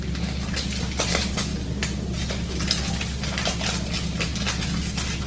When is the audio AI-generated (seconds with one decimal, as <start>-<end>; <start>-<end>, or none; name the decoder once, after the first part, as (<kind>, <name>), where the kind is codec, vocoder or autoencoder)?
none